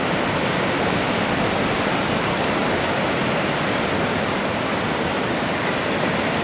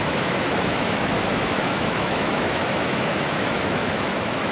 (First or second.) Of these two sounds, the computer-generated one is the second